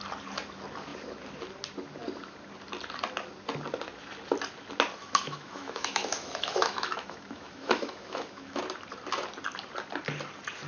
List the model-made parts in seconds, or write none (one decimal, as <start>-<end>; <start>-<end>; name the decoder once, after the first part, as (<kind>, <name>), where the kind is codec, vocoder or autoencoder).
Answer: 5.0-8.6 (autoencoder, DAC-VAE)